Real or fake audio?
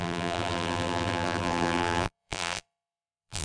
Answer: fake